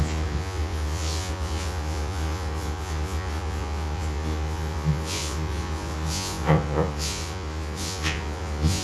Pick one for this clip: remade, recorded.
remade